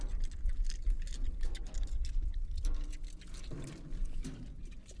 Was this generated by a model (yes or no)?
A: no